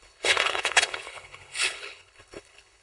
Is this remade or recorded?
remade